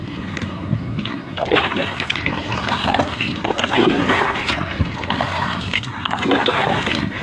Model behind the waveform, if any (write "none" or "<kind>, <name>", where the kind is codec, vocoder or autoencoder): codec, SNAC